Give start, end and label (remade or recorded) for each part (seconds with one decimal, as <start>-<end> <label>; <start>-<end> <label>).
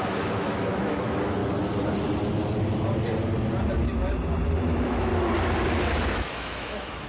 0.0-1.4 remade; 1.4-4.6 recorded; 4.6-5.1 remade; 5.1-6.1 recorded; 6.1-7.1 remade